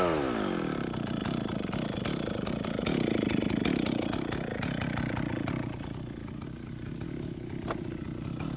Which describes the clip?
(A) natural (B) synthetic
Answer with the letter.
A